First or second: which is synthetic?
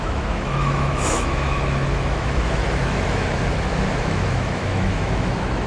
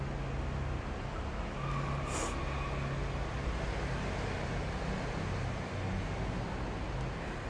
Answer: first